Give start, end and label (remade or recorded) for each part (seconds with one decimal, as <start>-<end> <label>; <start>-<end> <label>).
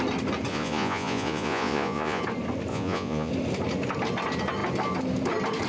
0.0-0.5 recorded; 0.5-2.2 remade; 2.2-2.7 recorded; 2.7-3.3 remade; 3.3-5.7 recorded